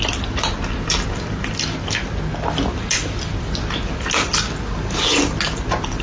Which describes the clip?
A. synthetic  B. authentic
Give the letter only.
B